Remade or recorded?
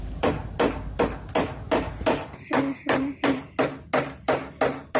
recorded